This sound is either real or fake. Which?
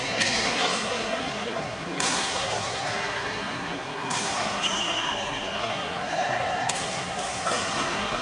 fake